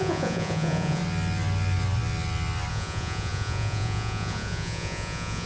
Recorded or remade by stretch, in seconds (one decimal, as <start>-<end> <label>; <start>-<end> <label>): 0.0-1.0 remade; 1.0-2.7 recorded; 2.7-5.5 remade